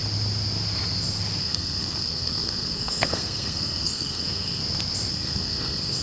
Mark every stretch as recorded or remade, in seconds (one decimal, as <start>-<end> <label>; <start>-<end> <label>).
0.0-1.4 recorded; 1.4-4.6 remade; 4.6-5.1 recorded; 5.1-6.0 remade